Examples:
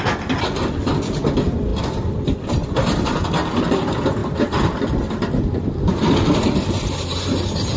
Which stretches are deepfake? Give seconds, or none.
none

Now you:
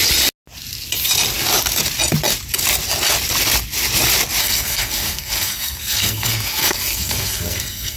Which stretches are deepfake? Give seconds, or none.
4.4-8.0 (codec, SNAC)

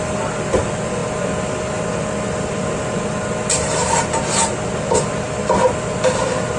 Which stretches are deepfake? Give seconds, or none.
none

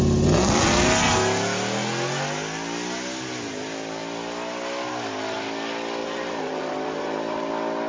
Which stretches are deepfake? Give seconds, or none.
6.0-7.5 (vocoder, BigVGAN v2)

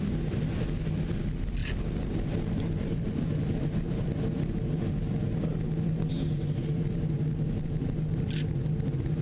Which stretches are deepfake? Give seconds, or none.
1.6-4.1 (vocoder, BigVGAN v2); 5.5-8.3

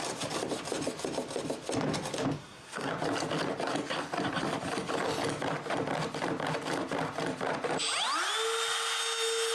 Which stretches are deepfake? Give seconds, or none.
2.4-2.9 (codec, SNAC)

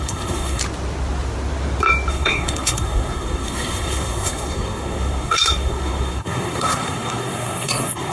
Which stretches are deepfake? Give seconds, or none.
0.0-0.6 (codec, SNAC); 2.1-8.1

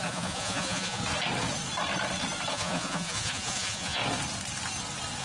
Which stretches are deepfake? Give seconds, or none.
0.0-1.0 (vocoder, Vocos); 2.5-4.0